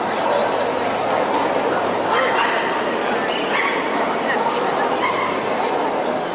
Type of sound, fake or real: real